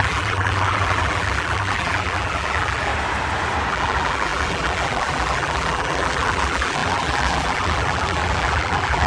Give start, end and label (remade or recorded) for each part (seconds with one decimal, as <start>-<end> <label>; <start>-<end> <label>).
0.0-2.9 remade; 2.9-3.7 recorded; 3.7-9.1 remade